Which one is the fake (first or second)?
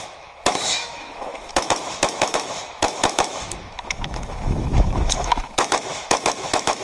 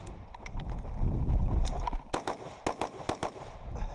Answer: first